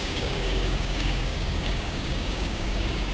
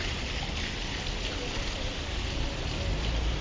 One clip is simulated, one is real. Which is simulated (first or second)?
first